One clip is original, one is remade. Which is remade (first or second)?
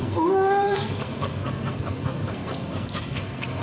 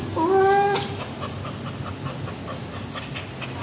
first